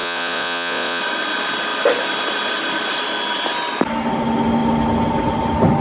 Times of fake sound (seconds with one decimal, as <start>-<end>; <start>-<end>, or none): 0.0-1.0